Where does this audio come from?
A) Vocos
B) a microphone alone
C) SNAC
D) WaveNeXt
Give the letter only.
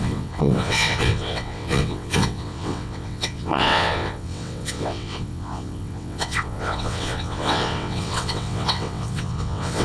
D